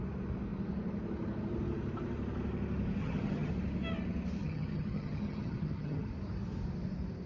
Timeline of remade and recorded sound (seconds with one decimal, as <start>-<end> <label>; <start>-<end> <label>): 0.0-3.0 recorded; 3.0-3.5 remade; 3.5-4.4 recorded; 4.4-6.1 remade; 6.1-7.3 recorded